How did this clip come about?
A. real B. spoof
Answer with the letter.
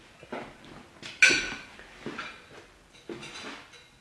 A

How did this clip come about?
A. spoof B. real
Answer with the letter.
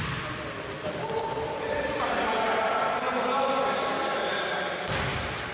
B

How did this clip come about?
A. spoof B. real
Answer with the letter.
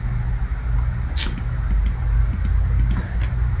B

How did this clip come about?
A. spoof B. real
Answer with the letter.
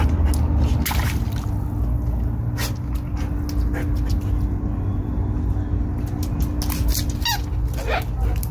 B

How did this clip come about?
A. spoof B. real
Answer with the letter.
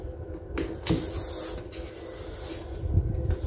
B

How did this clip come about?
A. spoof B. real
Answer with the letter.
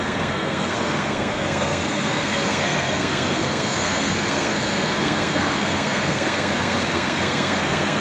A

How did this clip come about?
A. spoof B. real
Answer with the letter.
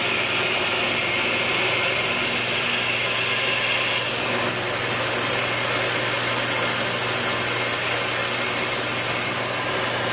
B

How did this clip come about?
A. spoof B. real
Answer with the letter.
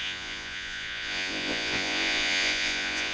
A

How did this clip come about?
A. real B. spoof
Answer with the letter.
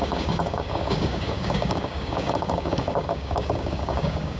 B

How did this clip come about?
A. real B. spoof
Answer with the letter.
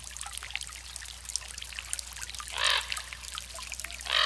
A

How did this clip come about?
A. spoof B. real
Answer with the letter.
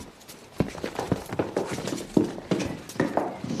B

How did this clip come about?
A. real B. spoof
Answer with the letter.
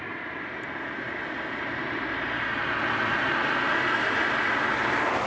A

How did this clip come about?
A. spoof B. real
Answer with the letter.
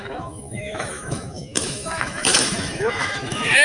A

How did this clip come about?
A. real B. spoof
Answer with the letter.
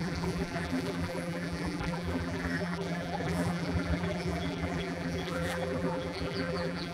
B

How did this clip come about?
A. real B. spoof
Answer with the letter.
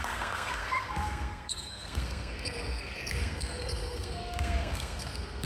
B